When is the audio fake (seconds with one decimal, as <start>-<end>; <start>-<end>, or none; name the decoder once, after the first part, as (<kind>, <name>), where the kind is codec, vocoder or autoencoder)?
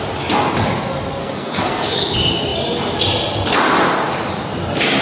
1.2-2.0 (codec, SNAC)